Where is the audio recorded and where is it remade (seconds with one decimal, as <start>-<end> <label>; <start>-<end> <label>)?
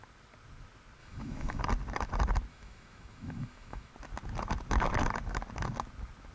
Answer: 0.0-1.0 recorded; 1.0-1.6 remade; 1.6-2.5 recorded; 2.5-3.9 remade; 3.9-6.3 recorded